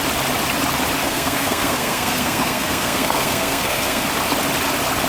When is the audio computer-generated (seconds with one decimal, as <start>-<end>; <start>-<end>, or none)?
1.0-4.1